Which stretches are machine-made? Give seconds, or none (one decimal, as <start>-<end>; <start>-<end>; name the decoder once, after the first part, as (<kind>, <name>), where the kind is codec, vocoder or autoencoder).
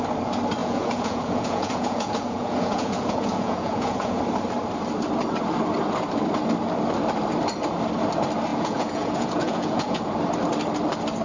0.6-4.2 (vocoder, Vocos); 8.5-10.0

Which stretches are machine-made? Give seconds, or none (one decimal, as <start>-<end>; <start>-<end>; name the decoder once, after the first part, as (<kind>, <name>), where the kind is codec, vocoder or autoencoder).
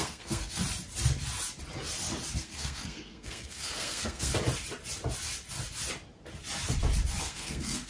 0.0-0.6 (codec, SNAC); 2.4-4.3; 7.2-7.9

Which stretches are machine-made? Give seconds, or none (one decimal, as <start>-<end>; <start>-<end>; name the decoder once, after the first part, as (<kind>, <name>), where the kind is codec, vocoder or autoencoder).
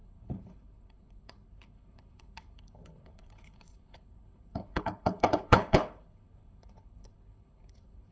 0.0-8.1 (codec, HILCodec)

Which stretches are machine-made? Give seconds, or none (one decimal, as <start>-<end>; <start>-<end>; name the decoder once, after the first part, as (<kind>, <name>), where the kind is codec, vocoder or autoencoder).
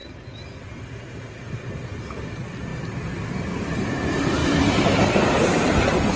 none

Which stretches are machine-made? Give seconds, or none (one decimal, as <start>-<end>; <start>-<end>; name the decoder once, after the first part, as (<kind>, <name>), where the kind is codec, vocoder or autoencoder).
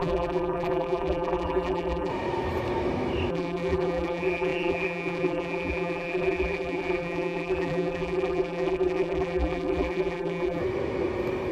0.0-2.1 (vocoder, BigVGAN v2); 3.3-10.6